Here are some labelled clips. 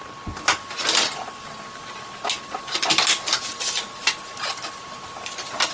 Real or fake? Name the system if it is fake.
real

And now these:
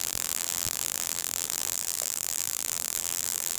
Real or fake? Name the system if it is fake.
fake, vocoder, BigVGAN v2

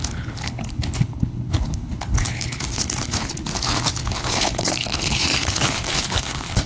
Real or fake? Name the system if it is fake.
fake, codec, HILCodec